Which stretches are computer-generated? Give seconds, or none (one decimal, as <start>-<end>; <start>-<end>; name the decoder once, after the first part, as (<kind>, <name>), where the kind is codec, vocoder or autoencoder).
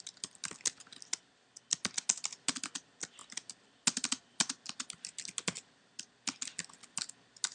none